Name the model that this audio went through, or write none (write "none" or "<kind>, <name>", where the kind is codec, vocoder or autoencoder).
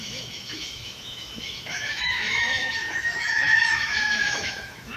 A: autoencoder, DAC-VAE